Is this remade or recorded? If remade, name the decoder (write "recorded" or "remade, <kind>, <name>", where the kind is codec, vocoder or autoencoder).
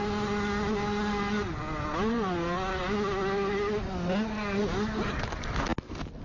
recorded